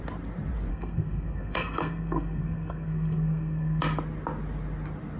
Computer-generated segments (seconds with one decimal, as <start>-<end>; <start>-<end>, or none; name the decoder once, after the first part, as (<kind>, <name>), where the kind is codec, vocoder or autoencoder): 0.7-3.8 (codec, SNAC)

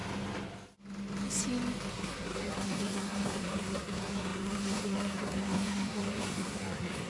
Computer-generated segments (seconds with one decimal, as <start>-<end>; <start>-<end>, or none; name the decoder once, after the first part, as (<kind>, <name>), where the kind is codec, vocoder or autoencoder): 1.9-7.1 (codec, SNAC)

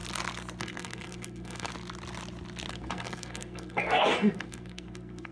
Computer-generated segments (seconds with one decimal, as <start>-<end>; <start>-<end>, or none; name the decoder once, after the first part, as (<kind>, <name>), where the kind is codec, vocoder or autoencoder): 0.6-1.7 (codec, SNAC); 2.7-5.3

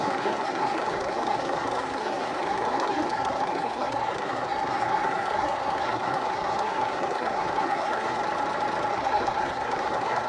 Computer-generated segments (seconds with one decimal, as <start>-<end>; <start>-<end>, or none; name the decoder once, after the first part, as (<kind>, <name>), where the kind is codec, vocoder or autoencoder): 0.0-8.2 (codec, SNAC); 8.9-10.3

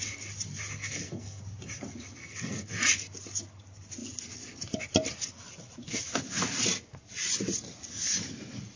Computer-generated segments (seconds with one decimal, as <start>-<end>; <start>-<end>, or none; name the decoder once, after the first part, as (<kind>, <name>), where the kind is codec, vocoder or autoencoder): 0.8-1.4 (codec, SNAC); 2.2-2.7

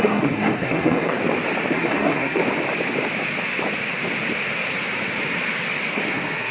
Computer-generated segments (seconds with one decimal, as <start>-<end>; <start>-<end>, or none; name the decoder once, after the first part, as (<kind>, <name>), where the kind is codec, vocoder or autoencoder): 0.0-1.2 (codec, SNAC); 1.7-2.4; 5.9-6.5

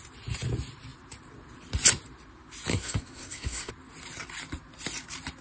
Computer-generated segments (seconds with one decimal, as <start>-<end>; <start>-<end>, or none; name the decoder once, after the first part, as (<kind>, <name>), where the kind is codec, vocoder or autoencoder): 2.7-3.7 (codec, SNAC)

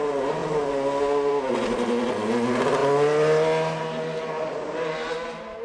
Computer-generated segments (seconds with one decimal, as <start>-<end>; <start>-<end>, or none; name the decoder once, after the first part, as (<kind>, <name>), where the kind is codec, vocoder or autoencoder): none